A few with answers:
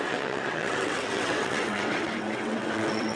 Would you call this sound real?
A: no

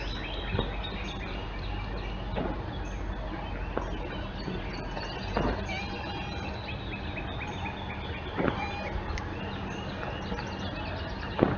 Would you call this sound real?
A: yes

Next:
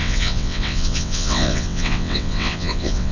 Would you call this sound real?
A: no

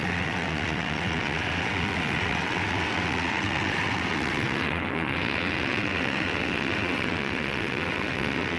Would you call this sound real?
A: no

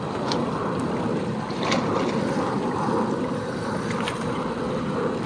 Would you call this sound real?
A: yes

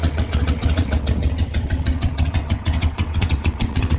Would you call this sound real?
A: no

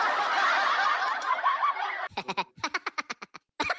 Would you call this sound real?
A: yes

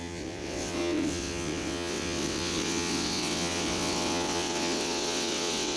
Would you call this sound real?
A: no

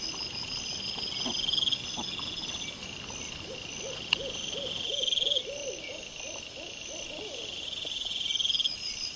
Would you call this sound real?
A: yes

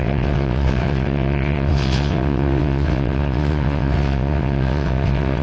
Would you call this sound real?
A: no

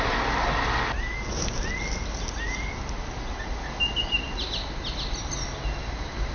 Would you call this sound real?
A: yes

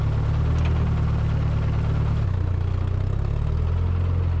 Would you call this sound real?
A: yes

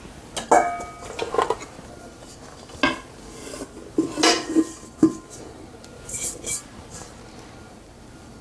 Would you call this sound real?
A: yes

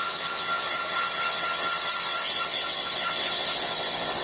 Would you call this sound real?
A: no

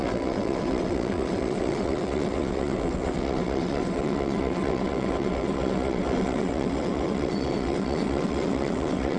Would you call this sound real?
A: no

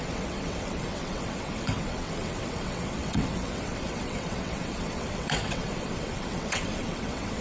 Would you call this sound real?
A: no